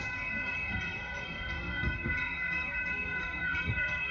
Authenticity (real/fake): fake